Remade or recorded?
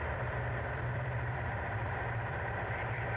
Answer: remade